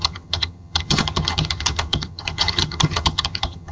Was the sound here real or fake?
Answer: fake